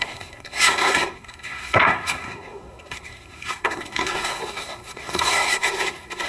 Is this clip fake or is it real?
fake